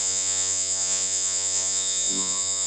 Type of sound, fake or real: fake